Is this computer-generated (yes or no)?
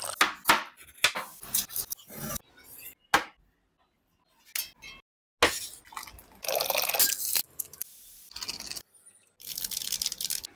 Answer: no